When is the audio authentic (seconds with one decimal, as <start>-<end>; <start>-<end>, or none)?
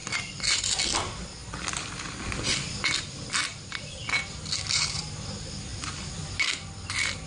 0.6-7.3